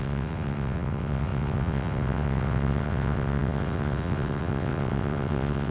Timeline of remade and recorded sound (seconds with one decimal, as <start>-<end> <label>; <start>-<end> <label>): 0.0-5.7 remade